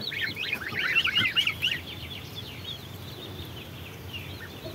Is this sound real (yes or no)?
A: yes